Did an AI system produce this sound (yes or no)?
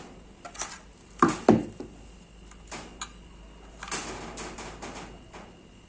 no